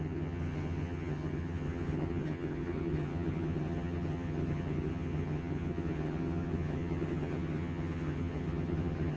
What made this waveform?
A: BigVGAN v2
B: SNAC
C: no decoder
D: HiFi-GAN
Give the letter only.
D